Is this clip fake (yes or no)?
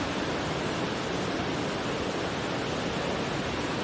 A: no